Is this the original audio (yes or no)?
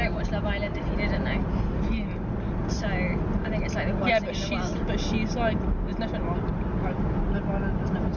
yes